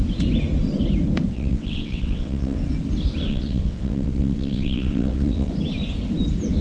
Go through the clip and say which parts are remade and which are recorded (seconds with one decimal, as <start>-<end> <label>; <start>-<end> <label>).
0.0-1.3 recorded; 1.3-2.6 remade; 2.6-3.3 recorded; 3.3-5.5 remade; 5.5-6.6 recorded